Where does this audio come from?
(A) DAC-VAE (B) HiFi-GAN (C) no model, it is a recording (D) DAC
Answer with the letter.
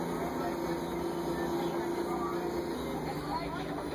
C